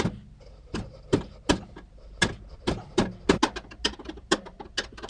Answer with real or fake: real